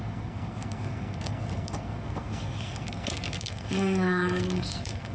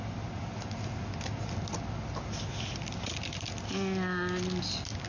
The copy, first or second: first